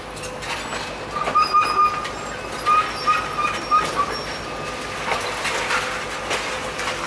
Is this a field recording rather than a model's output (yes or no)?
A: yes